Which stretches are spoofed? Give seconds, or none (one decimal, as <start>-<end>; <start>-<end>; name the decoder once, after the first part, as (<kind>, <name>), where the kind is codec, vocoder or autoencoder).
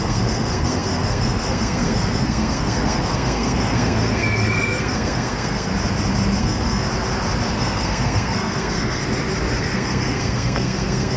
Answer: 0.0-5.7 (codec, SNAC); 6.4-6.9; 7.6-9.0; 9.6-11.2